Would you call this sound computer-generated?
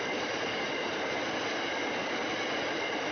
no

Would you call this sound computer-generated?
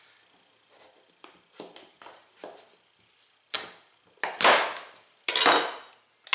no